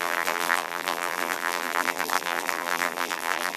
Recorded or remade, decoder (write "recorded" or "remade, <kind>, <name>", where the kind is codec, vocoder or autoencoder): remade, vocoder, BigVGAN v2